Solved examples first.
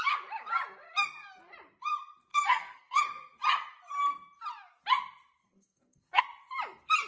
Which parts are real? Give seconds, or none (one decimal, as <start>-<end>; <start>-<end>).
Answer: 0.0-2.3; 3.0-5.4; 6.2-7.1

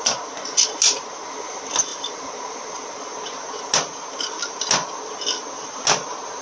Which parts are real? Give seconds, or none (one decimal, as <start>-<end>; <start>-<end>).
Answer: 0.0-1.9; 2.7-6.4

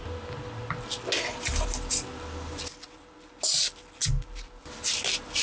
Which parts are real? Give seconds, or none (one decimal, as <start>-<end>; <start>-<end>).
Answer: 0.0-5.4

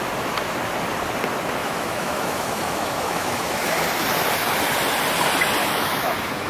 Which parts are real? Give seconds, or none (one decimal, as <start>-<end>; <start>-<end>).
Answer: 0.0-1.6; 3.7-5.6

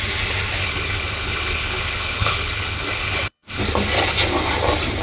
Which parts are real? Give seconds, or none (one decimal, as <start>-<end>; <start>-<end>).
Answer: 0.0-0.6; 3.6-5.0